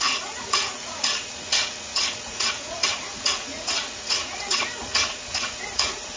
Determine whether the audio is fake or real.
fake